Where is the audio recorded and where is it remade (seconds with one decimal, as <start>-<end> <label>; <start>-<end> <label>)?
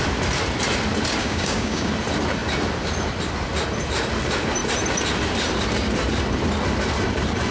0.0-1.2 recorded; 1.2-1.9 remade; 1.9-7.5 recorded